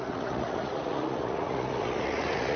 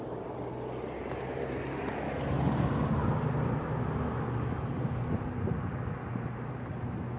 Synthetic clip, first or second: first